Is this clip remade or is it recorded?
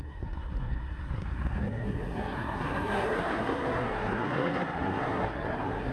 remade